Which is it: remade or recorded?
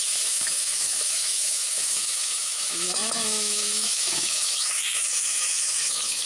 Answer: remade